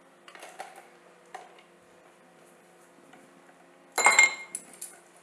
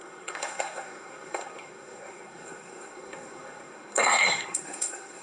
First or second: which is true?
first